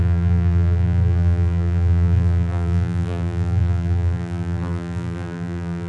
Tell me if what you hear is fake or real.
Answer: fake